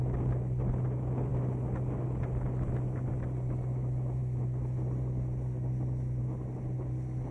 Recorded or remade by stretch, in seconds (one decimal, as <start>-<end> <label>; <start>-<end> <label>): 0.0-7.3 recorded